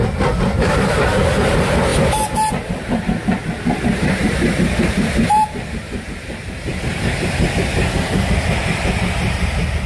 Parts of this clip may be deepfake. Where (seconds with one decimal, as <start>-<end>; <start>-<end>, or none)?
0.0-1.9; 2.5-3.4; 4.0-6.7; 8.1-9.9